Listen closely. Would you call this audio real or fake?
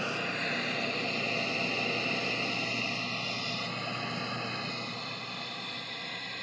real